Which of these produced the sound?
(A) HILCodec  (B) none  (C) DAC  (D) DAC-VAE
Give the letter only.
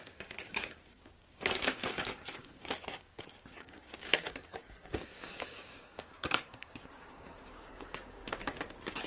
C